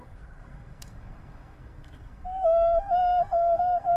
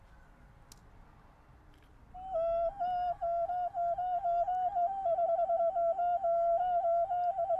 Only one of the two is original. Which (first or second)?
second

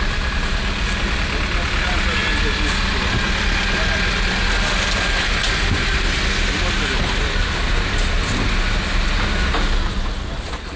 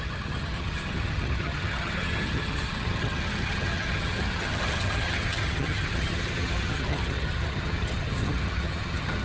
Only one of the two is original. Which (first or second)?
first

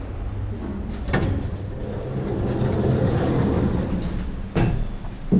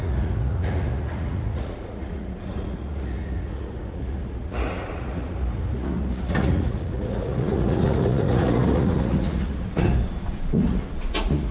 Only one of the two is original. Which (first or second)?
first